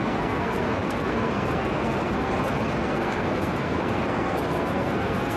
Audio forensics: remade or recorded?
remade